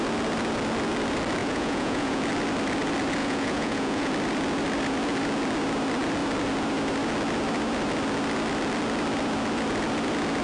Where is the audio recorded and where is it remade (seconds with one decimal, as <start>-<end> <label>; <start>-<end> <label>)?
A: 0.0-1.4 recorded; 1.4-2.2 remade; 2.2-3.2 recorded; 3.2-4.1 remade; 4.1-10.4 recorded